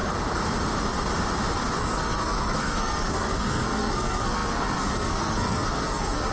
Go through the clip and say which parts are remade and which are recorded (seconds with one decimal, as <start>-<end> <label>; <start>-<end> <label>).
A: 0.0-1.8 recorded; 1.8-6.3 remade